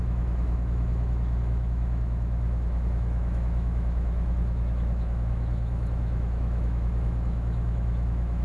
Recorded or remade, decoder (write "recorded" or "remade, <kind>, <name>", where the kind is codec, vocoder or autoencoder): remade, autoencoder, DAC-VAE